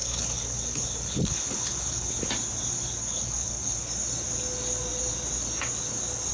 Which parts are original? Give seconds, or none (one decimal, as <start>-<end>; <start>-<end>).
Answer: 2.2-3.0; 3.9-6.3